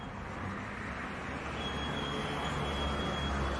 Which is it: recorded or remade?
recorded